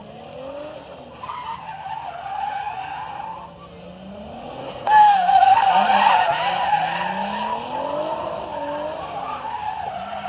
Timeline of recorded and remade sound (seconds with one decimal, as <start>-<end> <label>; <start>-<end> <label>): 0.0-4.6 recorded; 4.6-5.7 remade; 5.7-10.3 recorded